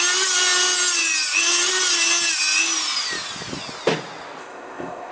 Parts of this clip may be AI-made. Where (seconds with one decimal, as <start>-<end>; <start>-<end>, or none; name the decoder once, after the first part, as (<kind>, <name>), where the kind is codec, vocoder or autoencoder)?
4.4-5.1 (codec, ZipCodec)